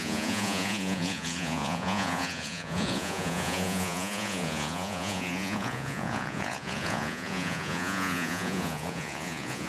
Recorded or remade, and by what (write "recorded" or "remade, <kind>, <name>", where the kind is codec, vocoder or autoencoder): remade, vocoder, Vocos